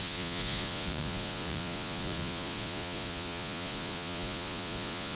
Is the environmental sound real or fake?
fake